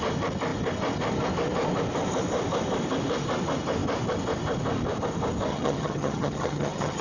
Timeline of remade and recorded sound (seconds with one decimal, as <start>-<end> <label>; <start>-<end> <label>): 0.0-5.5 recorded; 5.5-7.0 remade